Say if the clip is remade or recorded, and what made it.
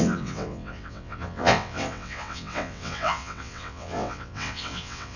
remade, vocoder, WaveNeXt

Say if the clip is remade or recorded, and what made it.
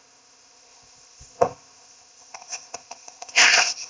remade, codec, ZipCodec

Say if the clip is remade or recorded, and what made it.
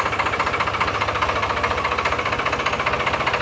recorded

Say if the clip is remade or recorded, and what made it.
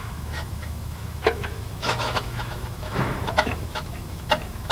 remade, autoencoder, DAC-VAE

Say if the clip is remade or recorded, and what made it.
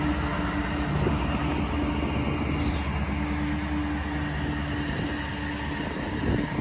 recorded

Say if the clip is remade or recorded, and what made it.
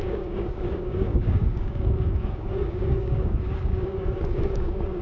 remade, codec, DAC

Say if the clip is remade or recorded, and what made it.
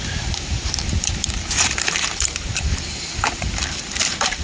remade, vocoder, BigVGAN v2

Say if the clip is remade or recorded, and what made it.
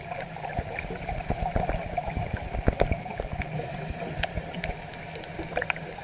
recorded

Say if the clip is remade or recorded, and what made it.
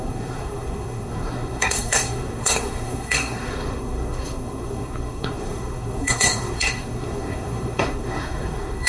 remade, codec, SNAC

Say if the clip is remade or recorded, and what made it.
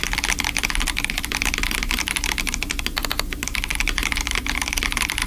recorded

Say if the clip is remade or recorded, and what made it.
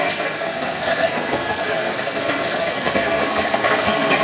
remade, codec, SNAC